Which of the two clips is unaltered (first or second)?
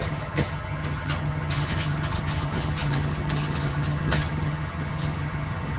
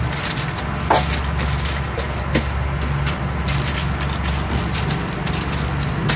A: second